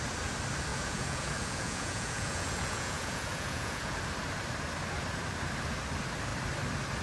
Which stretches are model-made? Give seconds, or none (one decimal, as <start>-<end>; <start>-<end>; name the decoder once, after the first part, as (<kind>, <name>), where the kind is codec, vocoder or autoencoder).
0.7-4.0 (vocoder, Vocos)